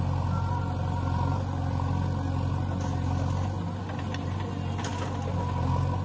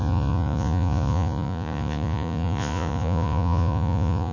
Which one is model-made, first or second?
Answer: second